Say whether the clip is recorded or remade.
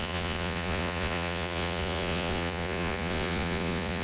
remade